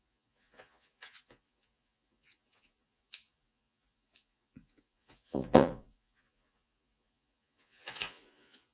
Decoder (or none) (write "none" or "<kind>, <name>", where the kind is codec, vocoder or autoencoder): vocoder, Vocos